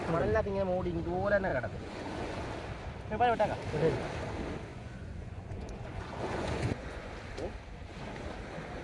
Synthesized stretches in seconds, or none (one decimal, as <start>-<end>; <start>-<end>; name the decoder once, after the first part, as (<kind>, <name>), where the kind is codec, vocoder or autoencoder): 1.5-2.5 (vocoder, Vocos); 4.7-7.1